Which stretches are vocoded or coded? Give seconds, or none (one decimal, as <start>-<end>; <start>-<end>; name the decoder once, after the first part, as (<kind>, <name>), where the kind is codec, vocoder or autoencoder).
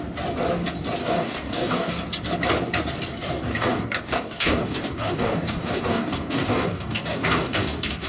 1.0-1.9 (codec, DAC); 3.5-8.1